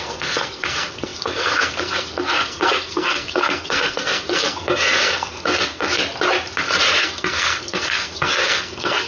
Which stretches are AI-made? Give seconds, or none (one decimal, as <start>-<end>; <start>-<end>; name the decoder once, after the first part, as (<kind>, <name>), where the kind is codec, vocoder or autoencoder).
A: 0.0-6.0 (codec, SNAC); 7.0-9.1